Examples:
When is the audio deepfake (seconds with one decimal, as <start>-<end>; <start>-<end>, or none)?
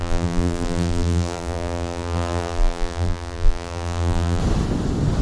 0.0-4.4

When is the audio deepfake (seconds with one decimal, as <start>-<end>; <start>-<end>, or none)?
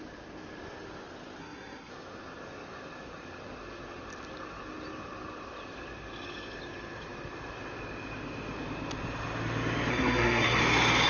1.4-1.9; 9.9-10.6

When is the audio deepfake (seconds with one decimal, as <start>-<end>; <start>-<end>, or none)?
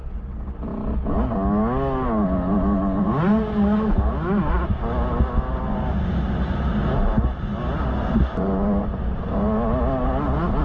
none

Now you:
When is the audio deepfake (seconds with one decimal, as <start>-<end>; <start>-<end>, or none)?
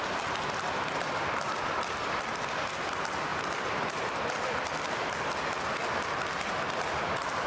none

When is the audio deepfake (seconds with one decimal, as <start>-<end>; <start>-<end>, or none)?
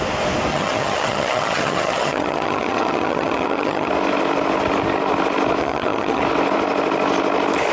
0.5-3.9; 5.6-6.2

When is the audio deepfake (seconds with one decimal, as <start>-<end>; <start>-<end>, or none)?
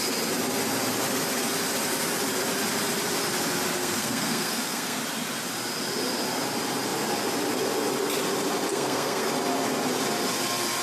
3.8-5.0; 8.7-9.3